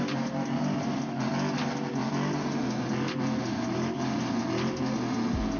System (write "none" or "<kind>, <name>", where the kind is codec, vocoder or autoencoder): none